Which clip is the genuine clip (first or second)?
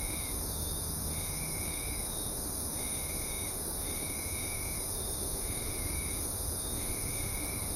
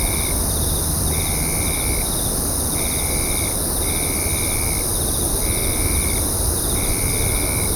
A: second